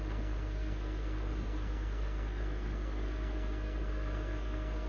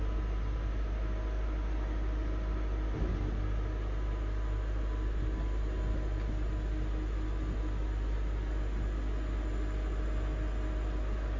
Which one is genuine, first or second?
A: second